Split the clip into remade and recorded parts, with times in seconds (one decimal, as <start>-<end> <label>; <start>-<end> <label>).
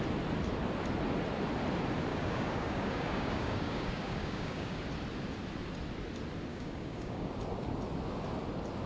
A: 0.0-2.1 recorded; 2.1-4.8 remade; 4.8-6.5 recorded; 6.5-7.3 remade; 7.3-8.9 recorded